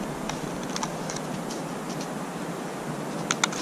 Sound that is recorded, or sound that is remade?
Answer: recorded